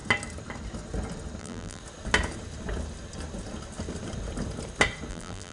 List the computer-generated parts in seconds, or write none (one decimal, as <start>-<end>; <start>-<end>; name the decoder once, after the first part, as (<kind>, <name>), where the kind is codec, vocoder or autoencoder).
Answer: 1.4-1.8 (vocoder, BigVGAN v2); 5.1-5.5